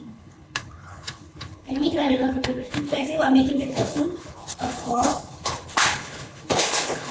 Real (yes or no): no